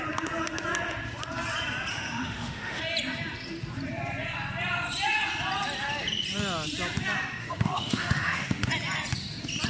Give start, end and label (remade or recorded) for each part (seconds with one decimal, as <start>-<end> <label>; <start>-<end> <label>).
0.0-1.9 recorded; 1.9-2.8 remade; 2.8-7.4 recorded; 7.4-8.7 remade; 8.7-9.7 recorded